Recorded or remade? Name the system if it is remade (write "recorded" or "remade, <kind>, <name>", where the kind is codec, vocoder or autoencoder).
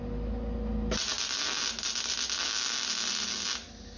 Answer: recorded